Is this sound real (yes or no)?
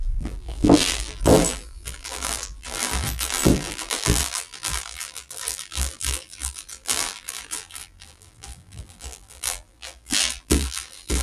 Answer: no